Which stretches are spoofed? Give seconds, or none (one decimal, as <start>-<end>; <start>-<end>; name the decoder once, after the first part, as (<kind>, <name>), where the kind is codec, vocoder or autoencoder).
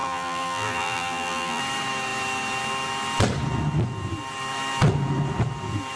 0.0-1.6 (vocoder, BigVGAN v2)